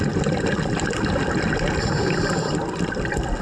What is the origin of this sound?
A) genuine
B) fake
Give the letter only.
A